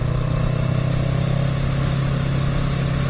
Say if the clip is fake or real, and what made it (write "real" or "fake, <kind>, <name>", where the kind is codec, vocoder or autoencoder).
real